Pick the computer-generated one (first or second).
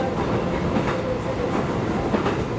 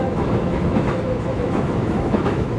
second